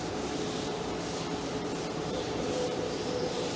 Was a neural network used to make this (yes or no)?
yes